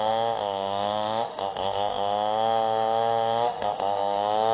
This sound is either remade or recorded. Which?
remade